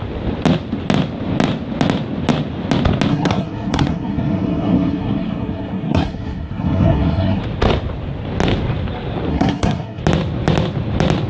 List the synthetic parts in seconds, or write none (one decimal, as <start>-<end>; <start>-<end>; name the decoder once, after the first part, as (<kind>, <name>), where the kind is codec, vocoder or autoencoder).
3.1-7.4 (codec, SNAC); 9.3-10.0